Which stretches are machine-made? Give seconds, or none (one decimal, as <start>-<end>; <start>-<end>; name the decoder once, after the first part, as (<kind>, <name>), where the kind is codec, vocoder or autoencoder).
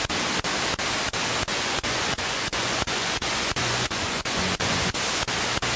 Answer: 1.5-5.0 (vocoder, Vocos)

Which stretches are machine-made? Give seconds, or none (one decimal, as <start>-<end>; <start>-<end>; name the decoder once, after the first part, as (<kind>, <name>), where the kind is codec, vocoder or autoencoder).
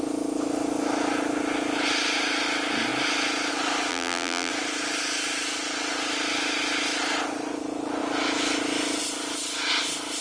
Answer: 3.9-4.5 (vocoder, BigVGAN v2)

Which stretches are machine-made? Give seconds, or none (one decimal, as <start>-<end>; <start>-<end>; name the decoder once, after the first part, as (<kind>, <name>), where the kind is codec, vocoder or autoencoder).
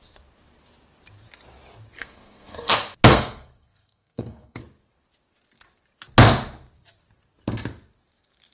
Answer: 2.0-2.7 (codec, SNAC); 3.1-4.6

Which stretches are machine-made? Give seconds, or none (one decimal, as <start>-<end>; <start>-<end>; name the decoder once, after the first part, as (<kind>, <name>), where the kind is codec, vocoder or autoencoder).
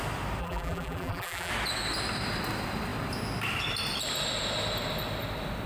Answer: 0.4-1.5 (vocoder, BigVGAN v2)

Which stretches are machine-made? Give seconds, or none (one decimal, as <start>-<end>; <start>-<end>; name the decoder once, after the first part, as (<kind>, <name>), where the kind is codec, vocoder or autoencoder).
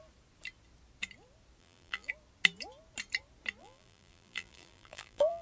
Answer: 1.6-2.1 (vocoder, BigVGAN v2); 3.6-5.4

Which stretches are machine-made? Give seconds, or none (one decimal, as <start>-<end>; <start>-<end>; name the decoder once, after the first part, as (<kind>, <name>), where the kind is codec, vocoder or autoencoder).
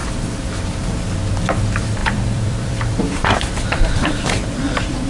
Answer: 2.0-5.1 (vocoder, BigVGAN v2)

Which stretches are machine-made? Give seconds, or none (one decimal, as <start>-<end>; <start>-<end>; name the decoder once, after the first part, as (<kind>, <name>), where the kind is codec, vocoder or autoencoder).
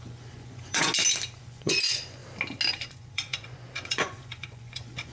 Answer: 0.0-0.9 (vocoder, Vocos); 1.4-2.2; 2.8-5.1